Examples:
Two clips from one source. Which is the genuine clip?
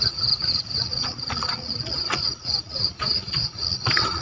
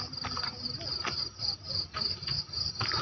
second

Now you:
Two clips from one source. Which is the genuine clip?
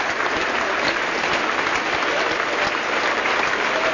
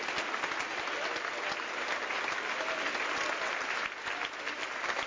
second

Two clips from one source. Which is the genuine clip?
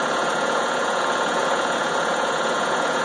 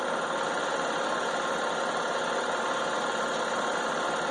second